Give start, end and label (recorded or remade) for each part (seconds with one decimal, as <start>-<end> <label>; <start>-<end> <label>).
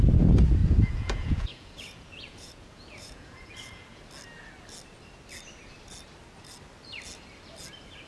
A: 0.0-0.6 recorded; 0.6-4.0 remade; 4.0-8.1 recorded